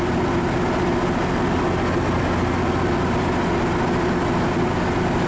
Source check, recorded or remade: recorded